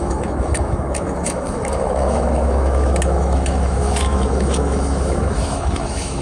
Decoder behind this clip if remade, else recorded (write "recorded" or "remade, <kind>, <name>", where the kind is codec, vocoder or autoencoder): remade, autoencoder, DAC-VAE